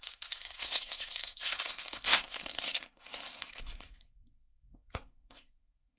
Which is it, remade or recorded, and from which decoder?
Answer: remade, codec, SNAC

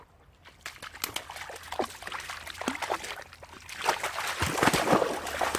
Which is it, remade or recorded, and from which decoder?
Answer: recorded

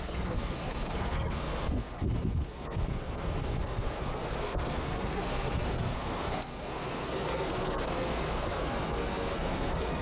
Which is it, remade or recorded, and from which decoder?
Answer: remade, codec, SNAC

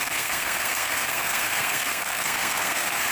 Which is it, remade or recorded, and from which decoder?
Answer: remade, codec, SNAC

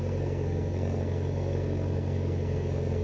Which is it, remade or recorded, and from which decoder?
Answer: remade, codec, SNAC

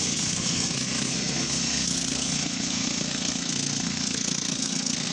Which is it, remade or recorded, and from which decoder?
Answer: remade, codec, SNAC